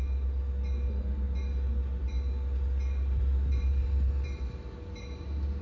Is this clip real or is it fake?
real